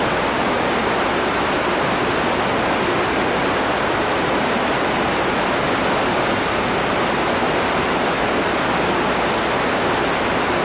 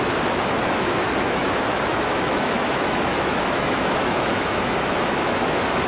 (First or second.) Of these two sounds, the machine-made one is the second